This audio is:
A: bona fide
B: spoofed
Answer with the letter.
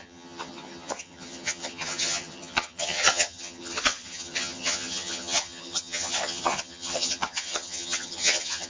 B